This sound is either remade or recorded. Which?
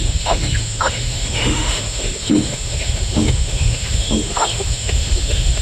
remade